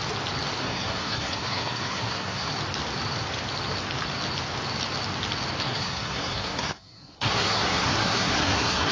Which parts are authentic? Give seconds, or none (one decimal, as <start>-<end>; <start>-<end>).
0.0-0.6; 2.5-5.6